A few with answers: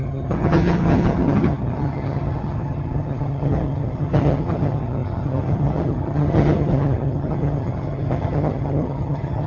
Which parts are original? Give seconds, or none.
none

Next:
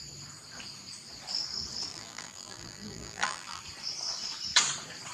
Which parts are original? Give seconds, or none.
0.0-1.9; 3.6-5.1

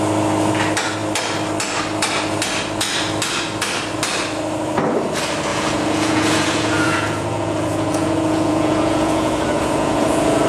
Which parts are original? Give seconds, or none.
0.0-5.5

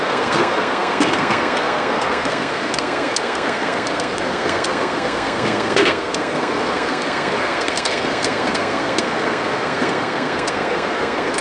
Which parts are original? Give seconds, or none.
none

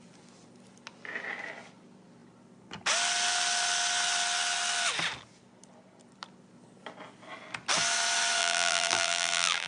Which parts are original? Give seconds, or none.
0.0-8.4